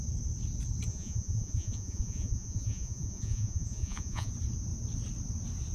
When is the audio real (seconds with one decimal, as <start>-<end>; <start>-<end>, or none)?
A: 0.0-0.9; 4.3-5.7